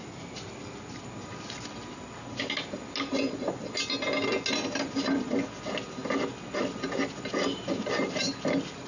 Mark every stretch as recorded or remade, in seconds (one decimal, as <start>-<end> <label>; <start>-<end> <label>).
0.0-8.9 recorded